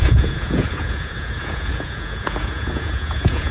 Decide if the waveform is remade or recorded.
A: remade